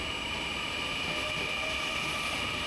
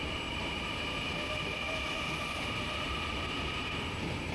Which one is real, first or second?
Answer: first